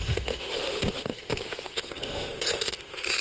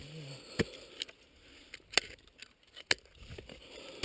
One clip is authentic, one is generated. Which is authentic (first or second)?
second